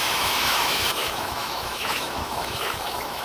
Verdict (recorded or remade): remade